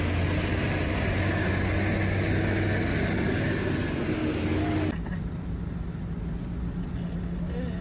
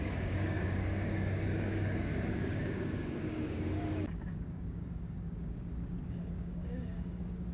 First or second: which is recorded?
first